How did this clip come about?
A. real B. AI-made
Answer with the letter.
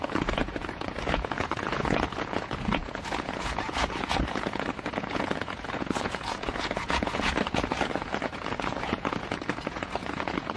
B